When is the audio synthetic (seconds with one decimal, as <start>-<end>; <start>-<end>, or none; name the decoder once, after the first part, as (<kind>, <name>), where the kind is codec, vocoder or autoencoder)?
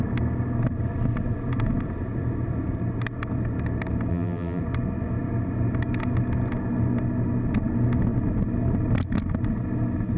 4.1-4.6 (vocoder, BigVGAN v2)